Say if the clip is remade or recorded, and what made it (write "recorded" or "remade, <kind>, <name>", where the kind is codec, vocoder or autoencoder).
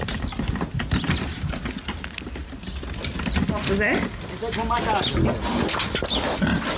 recorded